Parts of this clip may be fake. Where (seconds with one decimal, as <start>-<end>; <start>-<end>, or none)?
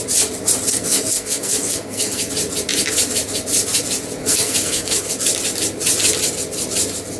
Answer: 0.7-2.3; 4.2-5.1